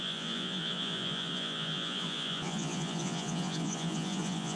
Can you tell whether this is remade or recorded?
remade